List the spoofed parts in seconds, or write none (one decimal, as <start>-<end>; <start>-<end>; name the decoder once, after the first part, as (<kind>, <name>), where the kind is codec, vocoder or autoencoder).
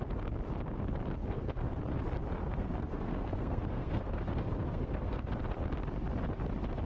1.2-1.8 (codec, SNAC); 2.4-5.3